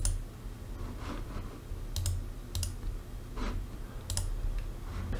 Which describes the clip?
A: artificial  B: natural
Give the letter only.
B